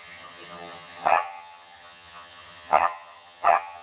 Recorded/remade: remade